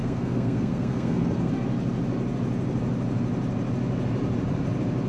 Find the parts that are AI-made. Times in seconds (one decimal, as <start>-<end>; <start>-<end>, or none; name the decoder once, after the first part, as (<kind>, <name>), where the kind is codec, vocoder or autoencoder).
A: 0.0-1.5 (codec, SNAC)

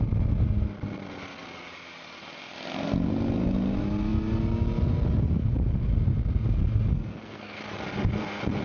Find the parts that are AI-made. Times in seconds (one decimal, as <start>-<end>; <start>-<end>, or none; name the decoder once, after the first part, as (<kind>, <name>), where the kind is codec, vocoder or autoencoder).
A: 6.9-7.6 (codec, SNAC)

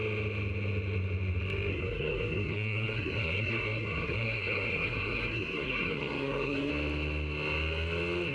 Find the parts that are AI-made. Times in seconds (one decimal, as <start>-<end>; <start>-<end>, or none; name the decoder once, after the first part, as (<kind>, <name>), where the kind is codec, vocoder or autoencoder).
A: 1.7-6.7 (codec, SNAC)

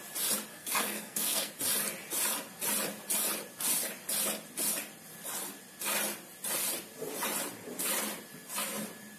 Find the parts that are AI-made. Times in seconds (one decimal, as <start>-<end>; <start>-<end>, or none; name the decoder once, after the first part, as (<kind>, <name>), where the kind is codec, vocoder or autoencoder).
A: 0.5-1.5 (codec, SNAC)